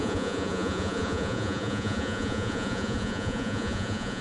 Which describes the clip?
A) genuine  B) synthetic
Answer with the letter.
B